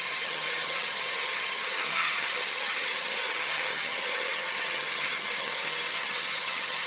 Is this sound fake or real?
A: fake